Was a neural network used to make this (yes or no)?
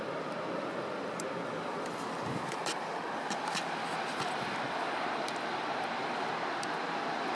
yes